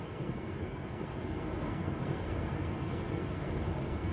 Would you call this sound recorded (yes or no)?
no